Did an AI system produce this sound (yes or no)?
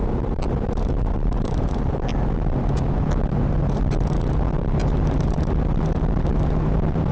yes